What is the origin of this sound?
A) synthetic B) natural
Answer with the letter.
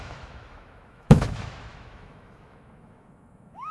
A